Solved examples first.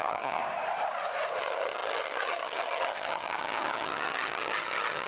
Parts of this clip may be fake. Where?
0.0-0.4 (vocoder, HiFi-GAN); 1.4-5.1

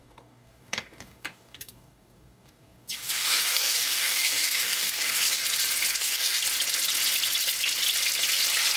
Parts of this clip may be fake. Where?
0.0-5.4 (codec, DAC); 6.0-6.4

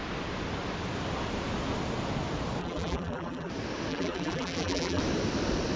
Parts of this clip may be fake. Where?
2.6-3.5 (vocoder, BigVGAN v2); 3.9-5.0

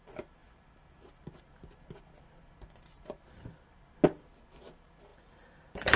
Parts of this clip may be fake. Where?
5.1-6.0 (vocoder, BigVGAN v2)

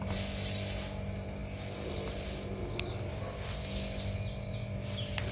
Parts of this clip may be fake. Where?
none

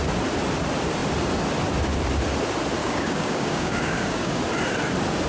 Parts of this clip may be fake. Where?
2.8-4.4 (codec, DAC)

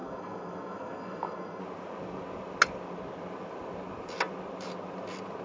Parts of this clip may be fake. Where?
0.0-1.6 (codec, SNAC)